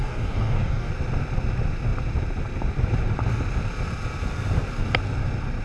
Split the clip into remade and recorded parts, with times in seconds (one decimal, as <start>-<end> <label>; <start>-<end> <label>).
0.0-0.9 remade; 0.9-5.6 recorded